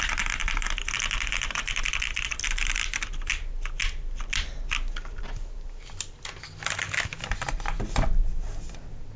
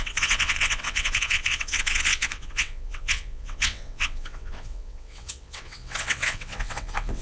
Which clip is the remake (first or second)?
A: second